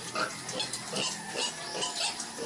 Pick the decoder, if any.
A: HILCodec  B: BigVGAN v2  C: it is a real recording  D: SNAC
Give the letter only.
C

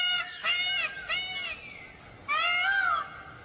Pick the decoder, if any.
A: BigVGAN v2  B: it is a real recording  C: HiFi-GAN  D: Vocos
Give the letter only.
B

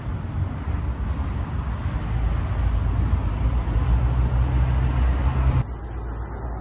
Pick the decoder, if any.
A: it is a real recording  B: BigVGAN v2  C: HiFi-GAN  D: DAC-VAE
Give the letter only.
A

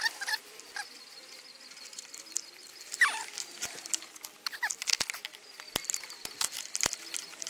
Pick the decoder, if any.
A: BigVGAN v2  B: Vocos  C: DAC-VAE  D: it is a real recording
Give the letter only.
D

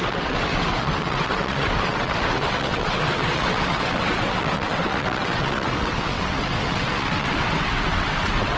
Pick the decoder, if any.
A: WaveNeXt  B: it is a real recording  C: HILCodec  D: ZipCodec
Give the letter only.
A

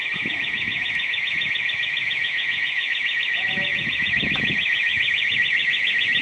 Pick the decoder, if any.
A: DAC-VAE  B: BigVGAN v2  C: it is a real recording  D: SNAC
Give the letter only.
A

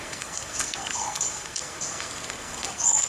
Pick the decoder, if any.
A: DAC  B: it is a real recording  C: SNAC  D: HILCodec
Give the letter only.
C